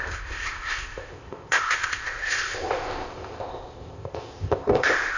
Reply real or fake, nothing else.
fake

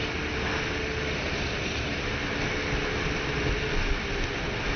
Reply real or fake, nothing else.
real